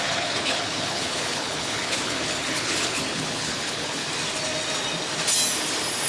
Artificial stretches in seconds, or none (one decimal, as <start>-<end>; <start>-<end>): 0.0-4.0